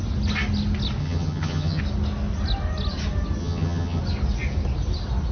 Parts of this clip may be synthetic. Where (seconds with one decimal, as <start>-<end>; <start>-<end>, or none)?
1.0-1.8; 3.4-4.0